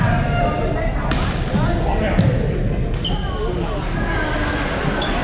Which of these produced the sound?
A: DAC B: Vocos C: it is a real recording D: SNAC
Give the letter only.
C